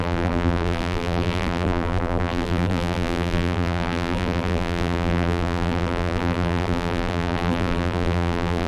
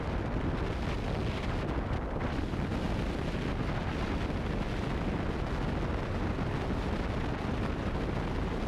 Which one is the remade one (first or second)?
first